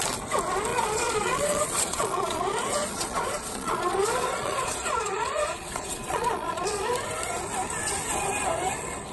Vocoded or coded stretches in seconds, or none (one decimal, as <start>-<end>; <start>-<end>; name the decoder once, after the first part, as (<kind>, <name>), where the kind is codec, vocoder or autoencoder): 0.7-2.4 (vocoder, Vocos); 2.8-6.9